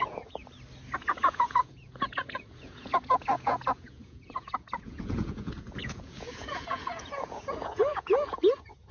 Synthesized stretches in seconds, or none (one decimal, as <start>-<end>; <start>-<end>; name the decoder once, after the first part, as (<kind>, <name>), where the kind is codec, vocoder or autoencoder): 0.0-0.4 (vocoder, Vocos); 1.0-8.9